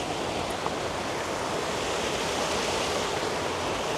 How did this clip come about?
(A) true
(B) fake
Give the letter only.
A